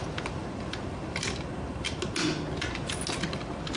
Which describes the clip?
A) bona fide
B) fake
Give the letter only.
A